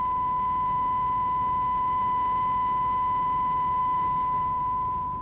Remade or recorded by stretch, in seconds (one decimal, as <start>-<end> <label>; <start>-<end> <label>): 0.0-3.8 recorded; 3.8-4.6 remade; 4.6-5.2 recorded